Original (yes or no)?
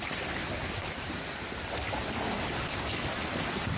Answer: yes